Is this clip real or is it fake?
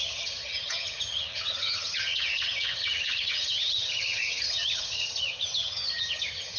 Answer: fake